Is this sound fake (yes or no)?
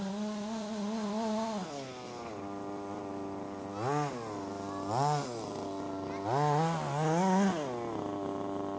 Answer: no